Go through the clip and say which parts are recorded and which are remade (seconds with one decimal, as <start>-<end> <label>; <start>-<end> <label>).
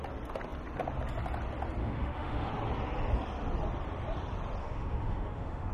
0.0-1.8 recorded; 1.8-2.5 remade; 2.5-4.6 recorded; 4.6-5.7 remade